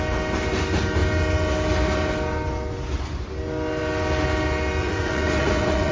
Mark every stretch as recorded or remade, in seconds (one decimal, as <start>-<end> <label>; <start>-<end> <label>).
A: 0.0-4.8 recorded; 4.8-5.9 remade